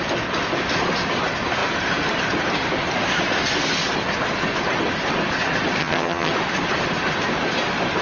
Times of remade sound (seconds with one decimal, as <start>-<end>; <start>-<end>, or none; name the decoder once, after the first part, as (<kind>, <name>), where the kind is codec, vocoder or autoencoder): 5.8-6.3 (vocoder, HiFi-GAN)